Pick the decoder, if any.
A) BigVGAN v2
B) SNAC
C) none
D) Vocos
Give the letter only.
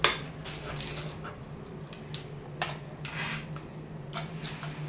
C